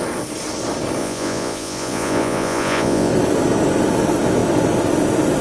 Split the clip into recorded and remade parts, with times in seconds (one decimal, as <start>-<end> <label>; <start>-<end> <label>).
0.0-1.0 recorded; 1.0-3.1 remade; 3.1-5.4 recorded